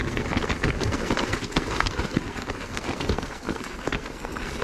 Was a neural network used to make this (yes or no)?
yes